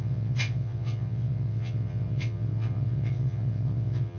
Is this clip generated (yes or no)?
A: yes